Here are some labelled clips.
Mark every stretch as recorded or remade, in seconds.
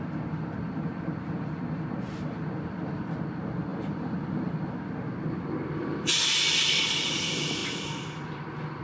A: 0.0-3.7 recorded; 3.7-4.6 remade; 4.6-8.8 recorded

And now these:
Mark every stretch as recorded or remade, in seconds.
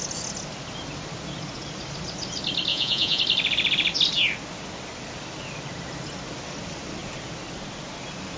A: 0.0-2.7 recorded; 2.7-3.2 remade; 3.2-8.4 recorded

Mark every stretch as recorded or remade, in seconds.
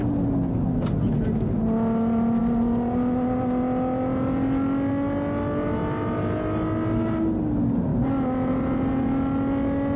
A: 0.0-10.0 recorded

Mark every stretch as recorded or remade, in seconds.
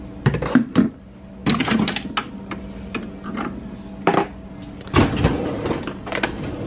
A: 0.0-6.7 recorded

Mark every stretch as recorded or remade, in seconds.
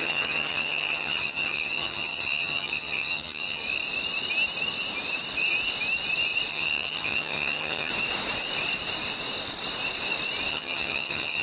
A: 0.0-3.6 remade; 3.6-6.5 recorded; 6.5-7.9 remade; 7.9-10.5 recorded; 10.5-11.4 remade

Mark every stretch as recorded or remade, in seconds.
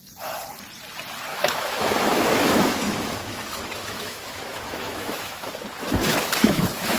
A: 0.0-1.3 recorded; 1.3-5.5 remade; 5.5-6.1 recorded; 6.1-7.0 remade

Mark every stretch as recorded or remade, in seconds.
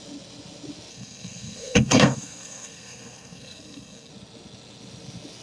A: 0.0-0.9 recorded; 0.9-4.1 remade; 4.1-5.4 recorded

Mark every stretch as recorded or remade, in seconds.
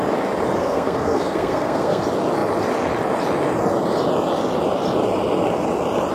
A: 0.0-0.6 recorded; 0.6-2.0 remade; 2.0-6.1 recorded